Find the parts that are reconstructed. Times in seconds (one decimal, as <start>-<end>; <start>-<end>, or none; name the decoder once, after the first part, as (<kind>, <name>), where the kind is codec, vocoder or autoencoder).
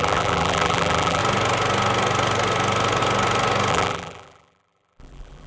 0.0-1.2 (vocoder, BigVGAN v2); 3.7-5.5